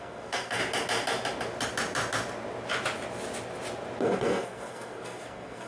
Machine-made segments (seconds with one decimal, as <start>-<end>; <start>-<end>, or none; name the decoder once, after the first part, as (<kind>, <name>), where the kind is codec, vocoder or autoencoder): 0.0-0.6 (codec, SNAC); 4.0-5.7